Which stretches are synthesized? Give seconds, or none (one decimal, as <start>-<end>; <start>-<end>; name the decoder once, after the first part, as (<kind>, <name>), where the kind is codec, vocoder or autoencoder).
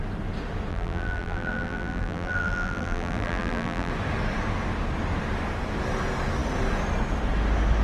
0.7-3.9 (vocoder, BigVGAN v2)